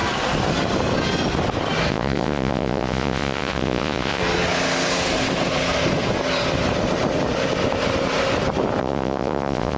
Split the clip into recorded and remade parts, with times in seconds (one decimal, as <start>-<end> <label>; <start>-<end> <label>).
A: 0.0-1.9 recorded; 1.9-4.2 remade; 4.2-8.8 recorded; 8.8-9.8 remade